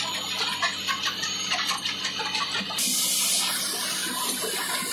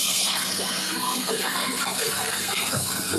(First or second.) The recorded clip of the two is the first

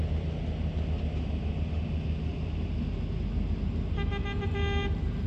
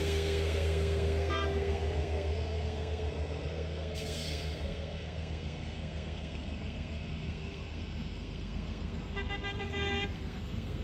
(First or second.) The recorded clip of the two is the first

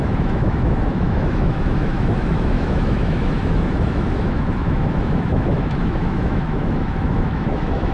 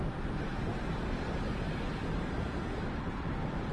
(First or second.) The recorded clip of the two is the second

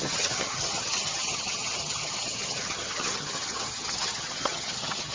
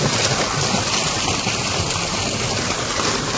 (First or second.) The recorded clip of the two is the second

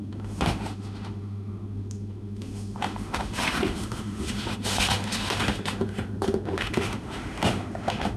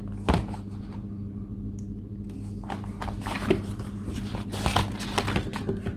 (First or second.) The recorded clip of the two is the second